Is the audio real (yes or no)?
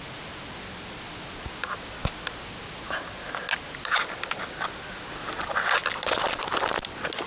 yes